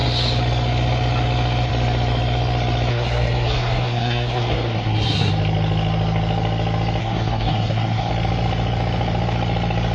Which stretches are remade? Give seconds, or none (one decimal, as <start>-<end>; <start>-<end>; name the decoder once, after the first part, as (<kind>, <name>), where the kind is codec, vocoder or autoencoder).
2.9-5.3 (codec, SNAC); 7.0-8.1

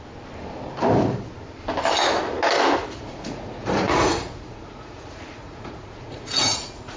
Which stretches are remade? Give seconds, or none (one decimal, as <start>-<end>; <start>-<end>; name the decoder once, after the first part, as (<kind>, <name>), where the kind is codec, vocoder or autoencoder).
2.8-7.0 (vocoder, Vocos)

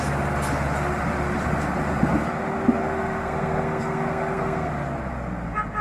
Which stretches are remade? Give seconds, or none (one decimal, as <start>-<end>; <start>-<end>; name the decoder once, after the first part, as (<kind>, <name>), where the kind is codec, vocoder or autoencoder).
2.8-4.7 (codec, SNAC)

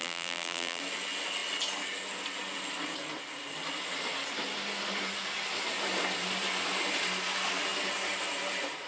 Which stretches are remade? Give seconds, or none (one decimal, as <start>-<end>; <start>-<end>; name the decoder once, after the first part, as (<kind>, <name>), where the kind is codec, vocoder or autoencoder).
0.0-0.8 (vocoder, BigVGAN v2)

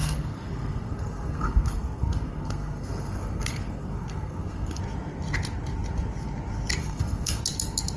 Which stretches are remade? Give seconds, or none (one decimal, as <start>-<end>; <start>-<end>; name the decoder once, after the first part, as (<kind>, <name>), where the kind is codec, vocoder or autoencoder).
0.0-4.8 (codec, SNAC); 6.8-7.4

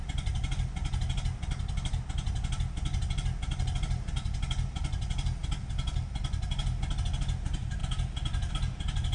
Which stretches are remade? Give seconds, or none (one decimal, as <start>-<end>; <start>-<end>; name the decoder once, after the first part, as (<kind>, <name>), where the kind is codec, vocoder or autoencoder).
none